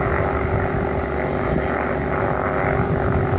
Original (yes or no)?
yes